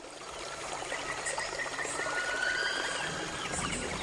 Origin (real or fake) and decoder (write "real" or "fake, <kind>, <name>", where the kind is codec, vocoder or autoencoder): real